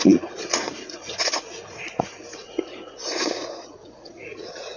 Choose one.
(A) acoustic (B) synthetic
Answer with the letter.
B